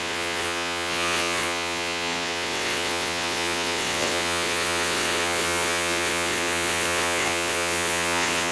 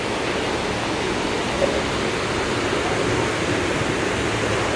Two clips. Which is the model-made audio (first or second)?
first